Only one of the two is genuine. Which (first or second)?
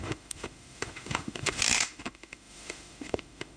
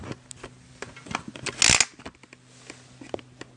second